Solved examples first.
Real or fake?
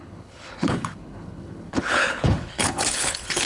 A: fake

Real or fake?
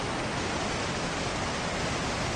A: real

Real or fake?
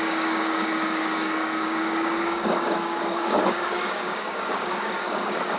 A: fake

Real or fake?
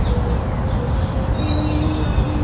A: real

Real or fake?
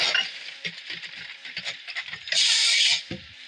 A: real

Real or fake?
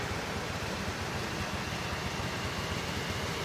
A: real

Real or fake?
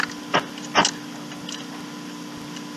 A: real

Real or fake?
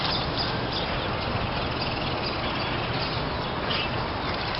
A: real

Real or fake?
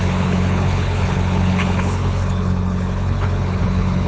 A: fake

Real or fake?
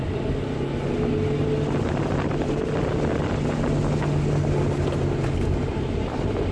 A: real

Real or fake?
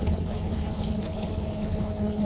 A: fake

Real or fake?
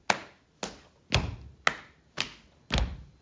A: real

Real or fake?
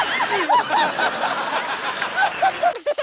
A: real